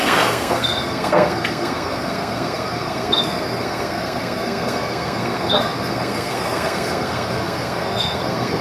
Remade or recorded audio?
remade